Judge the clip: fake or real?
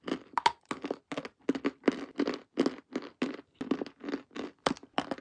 real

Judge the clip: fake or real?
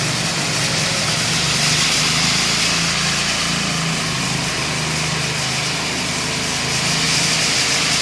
real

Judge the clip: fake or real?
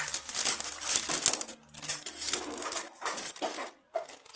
real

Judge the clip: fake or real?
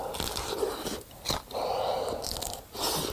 real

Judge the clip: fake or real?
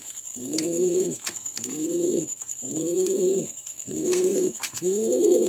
fake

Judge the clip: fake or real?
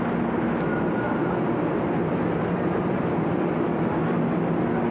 real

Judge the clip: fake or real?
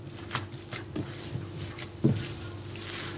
real